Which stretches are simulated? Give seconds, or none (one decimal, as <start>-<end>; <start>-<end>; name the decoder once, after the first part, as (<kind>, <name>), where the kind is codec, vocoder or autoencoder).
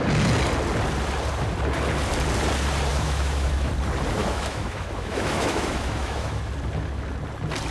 2.9-3.7 (autoencoder, DAC-VAE); 4.2-6.4